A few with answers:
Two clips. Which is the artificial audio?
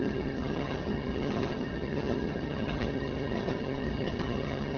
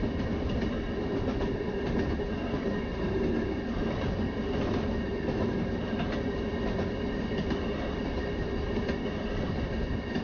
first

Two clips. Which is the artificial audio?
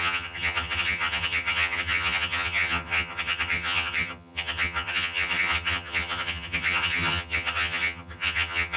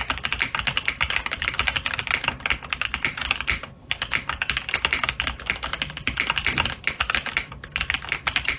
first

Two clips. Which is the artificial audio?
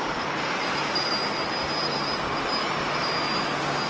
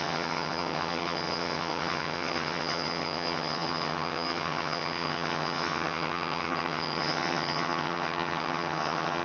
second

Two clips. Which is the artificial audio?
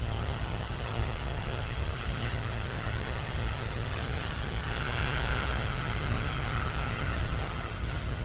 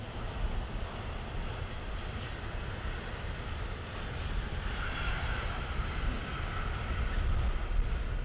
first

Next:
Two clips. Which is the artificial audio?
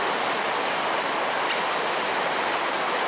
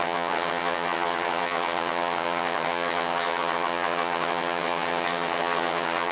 second